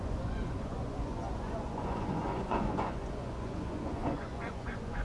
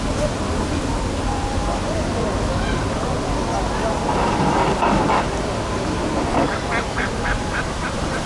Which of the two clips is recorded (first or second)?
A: second